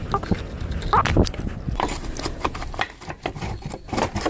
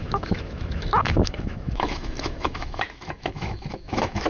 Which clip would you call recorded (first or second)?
first